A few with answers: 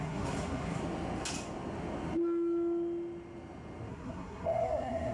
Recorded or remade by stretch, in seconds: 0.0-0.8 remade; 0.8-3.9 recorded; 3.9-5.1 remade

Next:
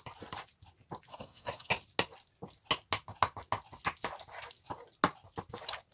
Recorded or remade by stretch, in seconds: 0.0-1.1 recorded; 1.1-1.7 remade; 1.7-5.9 recorded

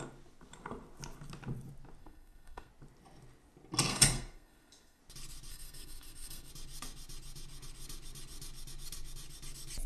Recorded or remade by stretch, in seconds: 0.0-2.0 recorded; 2.0-2.7 remade; 2.7-3.9 recorded; 3.9-5.0 remade; 5.0-5.5 recorded; 5.5-6.5 remade; 6.5-9.9 recorded